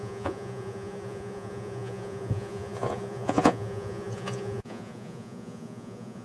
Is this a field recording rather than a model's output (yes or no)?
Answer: no